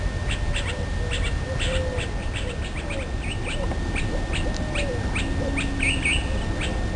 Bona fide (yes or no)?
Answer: yes